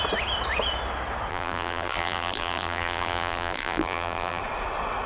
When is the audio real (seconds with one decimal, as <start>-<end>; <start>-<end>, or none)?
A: 0.0-1.3; 4.4-5.1